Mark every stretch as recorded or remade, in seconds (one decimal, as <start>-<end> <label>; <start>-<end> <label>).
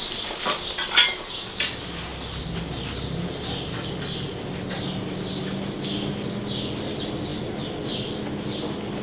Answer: 0.0-9.0 recorded